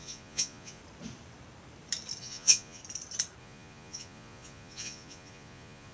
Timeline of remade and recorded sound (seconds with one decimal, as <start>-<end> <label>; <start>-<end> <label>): 0.0-0.8 remade; 0.8-2.2 recorded; 2.2-2.8 remade; 2.8-3.4 recorded; 3.4-5.9 remade